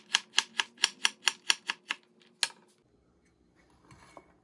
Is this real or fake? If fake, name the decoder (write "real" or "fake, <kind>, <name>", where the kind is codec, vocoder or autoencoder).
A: real